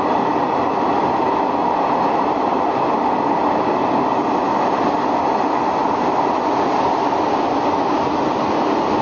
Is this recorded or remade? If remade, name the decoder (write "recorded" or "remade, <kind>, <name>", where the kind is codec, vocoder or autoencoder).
recorded